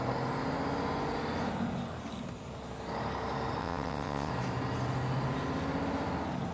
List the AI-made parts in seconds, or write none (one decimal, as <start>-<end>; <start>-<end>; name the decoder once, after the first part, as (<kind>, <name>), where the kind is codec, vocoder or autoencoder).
3.6-4.3 (vocoder, WaveNeXt)